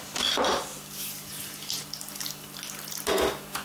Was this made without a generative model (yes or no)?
yes